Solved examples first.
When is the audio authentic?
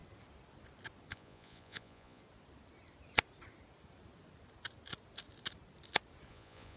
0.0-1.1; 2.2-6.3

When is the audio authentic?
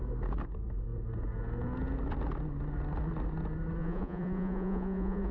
0.0-3.8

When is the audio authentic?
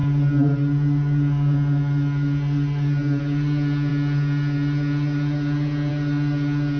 0.0-6.8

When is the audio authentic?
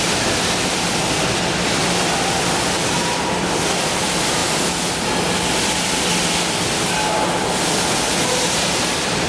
0.0-9.3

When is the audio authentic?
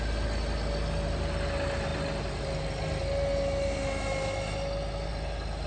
0.0-5.7